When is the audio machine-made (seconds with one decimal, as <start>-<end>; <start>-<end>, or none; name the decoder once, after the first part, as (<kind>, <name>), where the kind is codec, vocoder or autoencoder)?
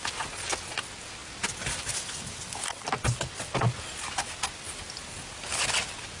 none